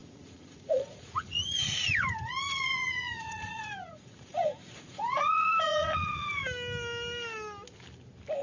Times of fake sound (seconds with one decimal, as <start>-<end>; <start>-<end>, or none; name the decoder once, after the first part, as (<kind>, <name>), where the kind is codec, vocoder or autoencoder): 0.0-6.4 (vocoder, Vocos)